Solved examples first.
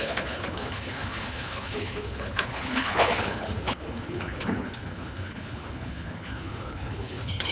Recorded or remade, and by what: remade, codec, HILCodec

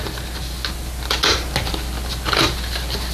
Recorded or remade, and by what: recorded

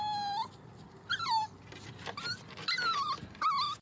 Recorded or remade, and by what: recorded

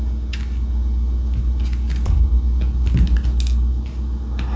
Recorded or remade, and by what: recorded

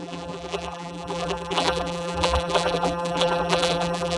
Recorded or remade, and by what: remade, vocoder, BigVGAN v2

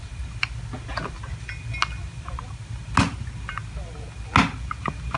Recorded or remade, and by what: recorded